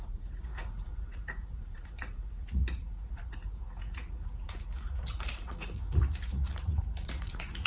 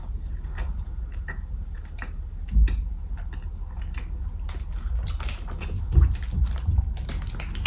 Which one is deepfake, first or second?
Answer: first